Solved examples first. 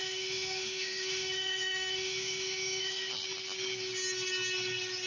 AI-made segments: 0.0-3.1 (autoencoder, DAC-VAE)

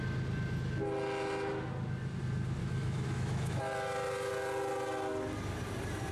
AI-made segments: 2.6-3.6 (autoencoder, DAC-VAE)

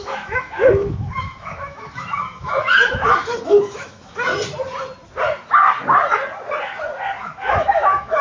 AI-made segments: 0.0-4.3 (autoencoder, DAC-VAE); 7.2-8.2

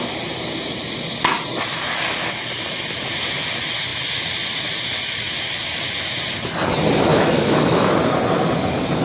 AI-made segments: 7.1-7.9 (autoencoder, DAC-VAE)

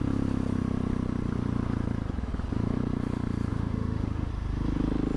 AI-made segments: 3.5-4.3 (autoencoder, DAC-VAE)